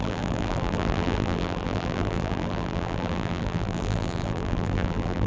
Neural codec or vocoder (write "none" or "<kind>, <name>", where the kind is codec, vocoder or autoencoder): vocoder, BigVGAN v2